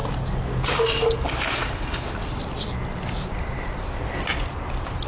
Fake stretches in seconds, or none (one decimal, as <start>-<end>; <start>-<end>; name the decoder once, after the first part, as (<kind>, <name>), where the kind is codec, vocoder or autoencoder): none

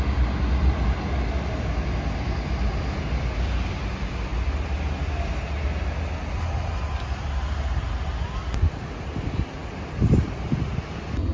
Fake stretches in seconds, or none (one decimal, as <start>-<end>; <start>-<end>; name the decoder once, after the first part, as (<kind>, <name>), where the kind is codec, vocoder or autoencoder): none

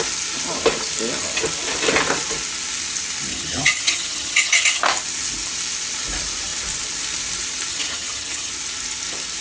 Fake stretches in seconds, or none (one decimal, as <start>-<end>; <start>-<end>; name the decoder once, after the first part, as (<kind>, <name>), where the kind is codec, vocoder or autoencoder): 3.3-4.8 (vocoder, HiFi-GAN); 7.7-8.5

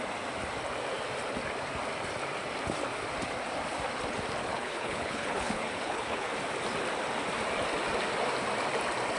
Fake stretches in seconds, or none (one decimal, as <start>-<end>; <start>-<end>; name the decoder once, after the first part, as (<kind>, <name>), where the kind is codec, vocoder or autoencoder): 4.4-6.3 (codec, HILCodec)

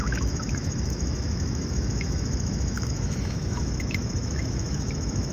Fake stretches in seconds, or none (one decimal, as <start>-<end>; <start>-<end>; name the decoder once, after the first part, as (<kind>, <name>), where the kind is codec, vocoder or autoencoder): 0.0-5.3 (autoencoder, DAC-VAE)